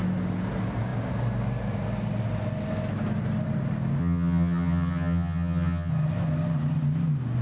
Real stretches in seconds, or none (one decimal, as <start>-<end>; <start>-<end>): 0.0-4.0; 5.9-7.4